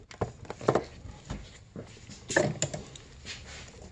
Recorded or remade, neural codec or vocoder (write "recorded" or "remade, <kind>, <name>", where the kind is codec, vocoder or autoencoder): recorded